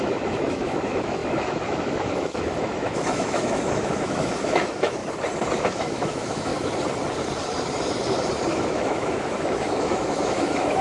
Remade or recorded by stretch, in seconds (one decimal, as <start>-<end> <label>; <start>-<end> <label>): 0.0-5.0 remade; 5.0-5.6 recorded; 5.6-6.5 remade; 6.5-8.5 recorded; 8.5-10.8 remade